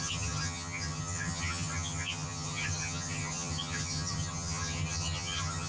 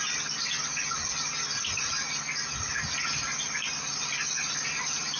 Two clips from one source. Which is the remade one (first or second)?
first